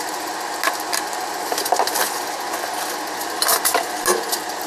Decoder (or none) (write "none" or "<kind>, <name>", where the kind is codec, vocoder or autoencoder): none